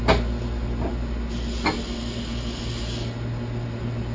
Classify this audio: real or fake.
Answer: real